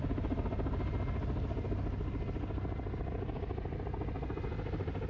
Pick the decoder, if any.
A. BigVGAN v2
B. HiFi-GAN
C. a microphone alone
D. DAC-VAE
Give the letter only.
C